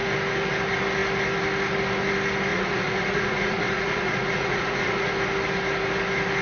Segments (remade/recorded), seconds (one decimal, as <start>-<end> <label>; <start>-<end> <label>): 0.0-2.5 recorded; 2.5-5.1 remade; 5.1-6.4 recorded